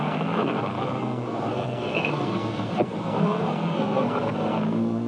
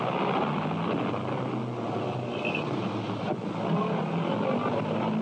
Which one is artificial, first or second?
first